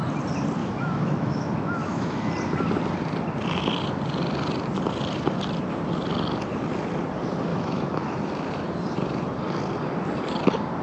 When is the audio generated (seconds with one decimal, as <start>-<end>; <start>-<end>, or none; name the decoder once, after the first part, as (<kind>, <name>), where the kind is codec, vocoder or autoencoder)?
0.6-2.3 (autoencoder, DAC-VAE); 7.5-8.2